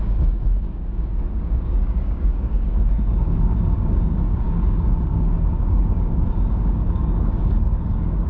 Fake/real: fake